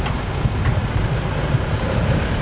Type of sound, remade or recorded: recorded